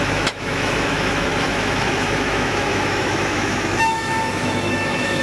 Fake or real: fake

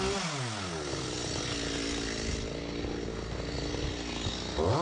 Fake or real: real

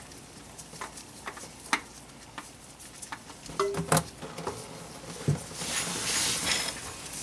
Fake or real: real